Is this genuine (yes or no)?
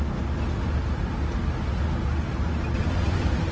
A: yes